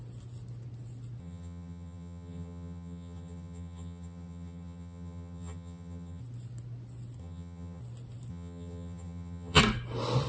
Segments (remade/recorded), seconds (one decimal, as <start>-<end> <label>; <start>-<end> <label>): 0.0-1.2 recorded; 1.2-6.2 remade; 6.2-7.2 recorded; 7.2-7.8 remade; 7.8-8.3 recorded; 8.3-9.6 remade; 9.6-10.3 recorded